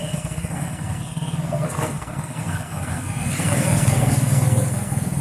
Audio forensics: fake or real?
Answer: fake